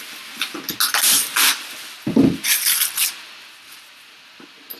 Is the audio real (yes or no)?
yes